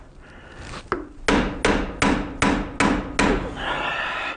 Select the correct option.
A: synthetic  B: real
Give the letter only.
B